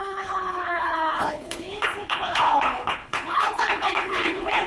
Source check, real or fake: fake